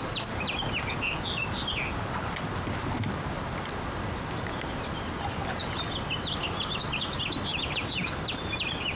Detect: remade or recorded recorded